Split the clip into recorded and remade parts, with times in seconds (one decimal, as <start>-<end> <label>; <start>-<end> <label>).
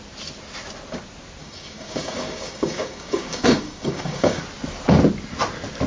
0.0-1.4 recorded; 1.4-4.4 remade; 4.4-5.9 recorded